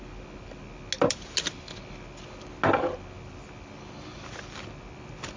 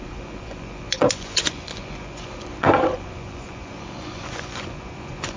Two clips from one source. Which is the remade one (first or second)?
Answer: second